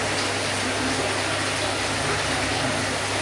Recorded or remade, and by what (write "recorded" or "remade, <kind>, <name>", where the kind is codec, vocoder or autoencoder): recorded